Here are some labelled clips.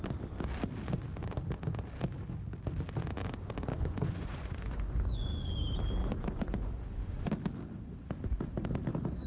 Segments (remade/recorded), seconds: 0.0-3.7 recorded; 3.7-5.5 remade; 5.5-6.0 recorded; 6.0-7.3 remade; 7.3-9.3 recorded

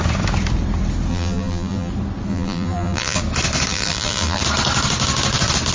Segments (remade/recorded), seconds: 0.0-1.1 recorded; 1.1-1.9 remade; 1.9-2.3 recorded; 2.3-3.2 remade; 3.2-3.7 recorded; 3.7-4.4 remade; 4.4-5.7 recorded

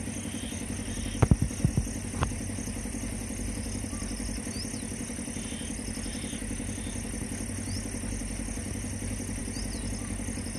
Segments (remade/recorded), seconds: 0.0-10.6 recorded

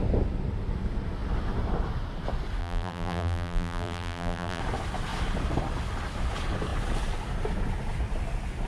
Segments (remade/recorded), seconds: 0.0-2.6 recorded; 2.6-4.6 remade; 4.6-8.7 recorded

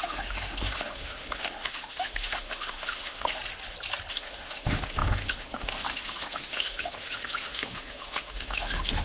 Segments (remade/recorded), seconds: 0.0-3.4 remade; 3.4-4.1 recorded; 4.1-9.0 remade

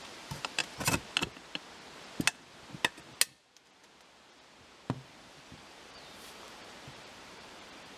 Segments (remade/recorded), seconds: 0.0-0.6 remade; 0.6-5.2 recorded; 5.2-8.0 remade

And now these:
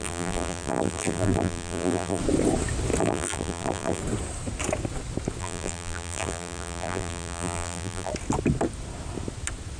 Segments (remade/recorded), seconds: 0.0-2.2 remade; 2.2-3.0 recorded; 3.0-4.0 remade; 4.0-5.4 recorded; 5.4-8.1 remade; 8.1-9.8 recorded